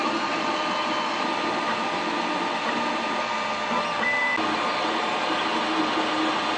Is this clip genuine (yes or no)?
yes